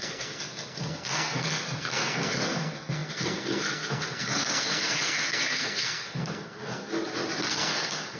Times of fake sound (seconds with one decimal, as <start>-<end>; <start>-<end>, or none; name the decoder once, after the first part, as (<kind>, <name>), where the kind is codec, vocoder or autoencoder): 0.0-6.9 (codec, SNAC); 7.5-8.2